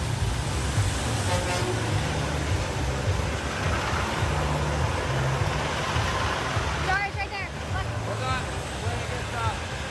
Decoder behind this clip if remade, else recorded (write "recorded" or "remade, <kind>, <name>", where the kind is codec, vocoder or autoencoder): recorded